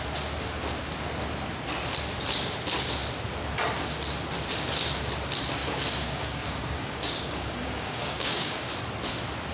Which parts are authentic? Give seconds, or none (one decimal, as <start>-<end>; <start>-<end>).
0.0-5.6; 8.7-9.5